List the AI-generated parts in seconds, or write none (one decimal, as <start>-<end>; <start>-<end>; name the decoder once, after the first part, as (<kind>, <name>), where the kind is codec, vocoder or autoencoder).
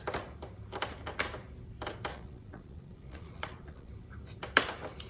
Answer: 2.1-3.9 (vocoder, Vocos)